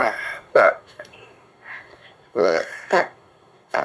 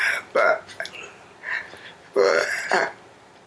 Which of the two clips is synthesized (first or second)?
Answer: first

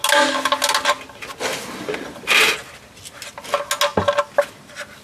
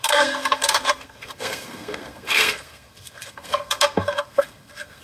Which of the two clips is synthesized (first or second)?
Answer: second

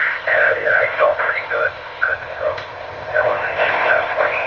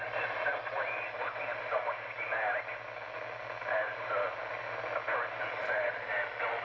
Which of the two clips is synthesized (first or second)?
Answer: first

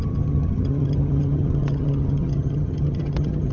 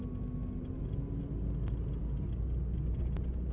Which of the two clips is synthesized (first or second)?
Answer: first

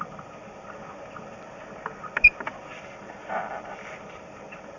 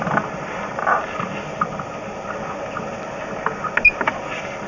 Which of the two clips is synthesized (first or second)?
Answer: first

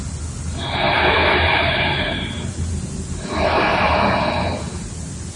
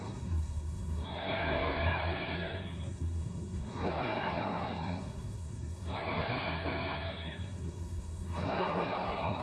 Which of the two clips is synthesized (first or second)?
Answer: second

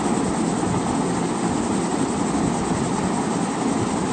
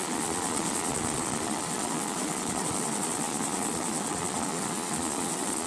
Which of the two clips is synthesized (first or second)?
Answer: second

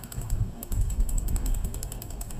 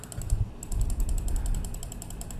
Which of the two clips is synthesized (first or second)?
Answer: first